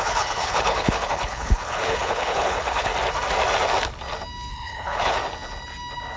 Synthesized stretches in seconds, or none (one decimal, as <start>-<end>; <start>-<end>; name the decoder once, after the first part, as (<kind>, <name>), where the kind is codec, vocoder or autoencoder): 0.0-2.9 (codec, HILCodec); 4.5-5.2